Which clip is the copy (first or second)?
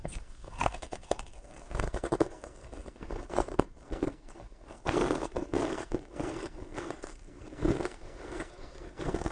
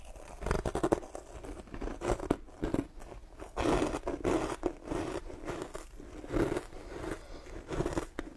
first